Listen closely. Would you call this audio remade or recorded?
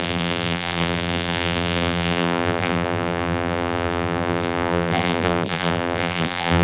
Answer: remade